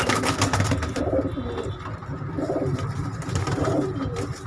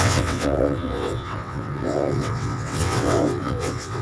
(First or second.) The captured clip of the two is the first